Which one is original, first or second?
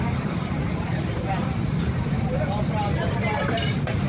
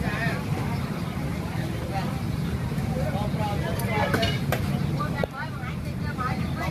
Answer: second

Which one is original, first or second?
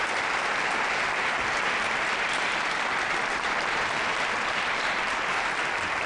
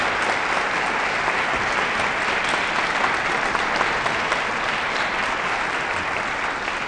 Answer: second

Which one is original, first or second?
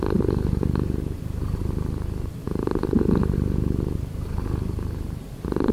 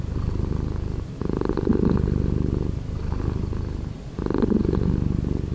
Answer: second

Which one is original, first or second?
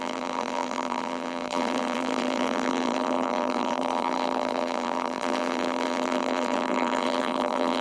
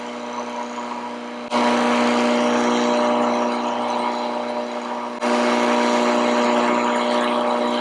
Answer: second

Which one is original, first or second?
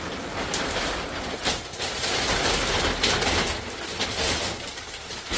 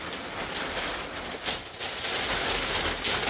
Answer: second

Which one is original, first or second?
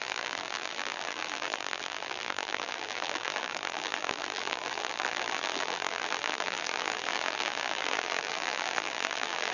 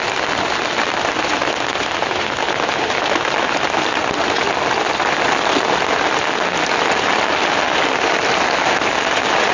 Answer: second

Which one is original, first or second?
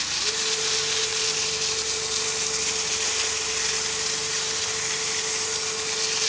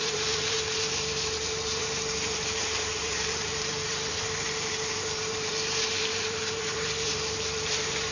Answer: first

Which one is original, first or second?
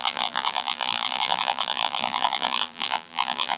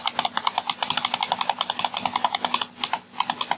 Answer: second